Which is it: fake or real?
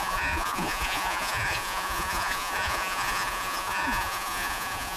fake